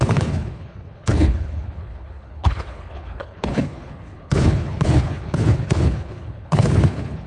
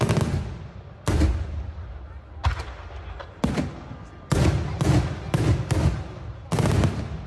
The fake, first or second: first